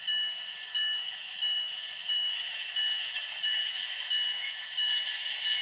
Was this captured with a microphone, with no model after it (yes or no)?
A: no